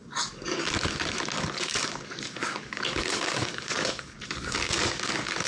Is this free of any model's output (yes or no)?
no